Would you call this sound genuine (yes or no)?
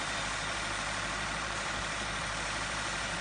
no